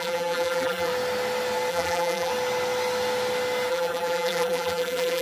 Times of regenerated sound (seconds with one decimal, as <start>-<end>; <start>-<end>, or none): 0.0-0.9; 1.7-2.3; 3.7-5.2

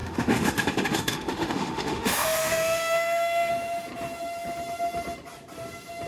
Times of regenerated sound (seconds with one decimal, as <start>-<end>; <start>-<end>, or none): 0.0-3.5

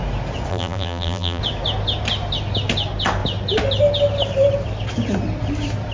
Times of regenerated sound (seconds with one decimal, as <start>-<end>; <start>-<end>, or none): 0.5-1.4

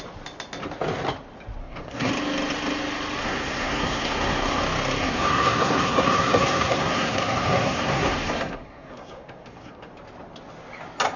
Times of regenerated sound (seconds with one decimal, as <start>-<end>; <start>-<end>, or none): 1.6-2.1; 3.2-4.6; 5.0-9.9